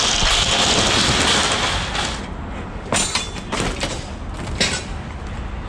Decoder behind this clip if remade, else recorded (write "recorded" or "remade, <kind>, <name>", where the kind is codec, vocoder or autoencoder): recorded